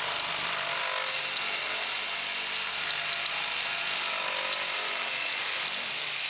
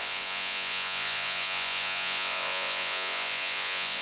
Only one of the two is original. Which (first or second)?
first